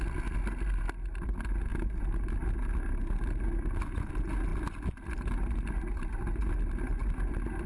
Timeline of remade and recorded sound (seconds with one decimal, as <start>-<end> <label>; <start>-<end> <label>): 0.0-7.7 recorded